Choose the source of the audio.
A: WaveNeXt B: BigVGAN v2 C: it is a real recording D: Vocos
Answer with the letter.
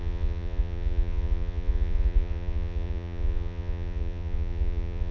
D